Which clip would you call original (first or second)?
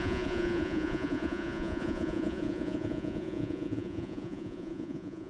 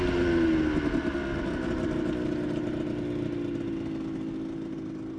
second